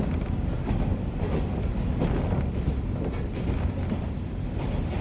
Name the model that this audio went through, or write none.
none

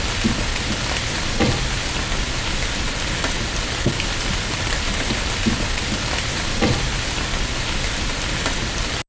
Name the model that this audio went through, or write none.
none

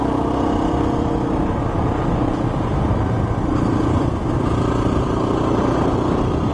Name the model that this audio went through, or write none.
none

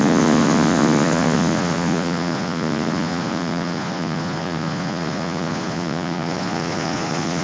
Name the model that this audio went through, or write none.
vocoder, Vocos